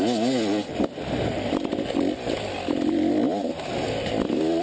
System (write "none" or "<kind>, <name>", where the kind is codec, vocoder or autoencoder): none